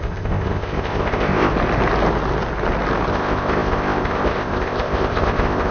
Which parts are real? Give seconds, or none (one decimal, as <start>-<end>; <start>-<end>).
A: 1.5-3.1